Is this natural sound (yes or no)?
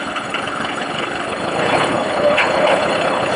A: no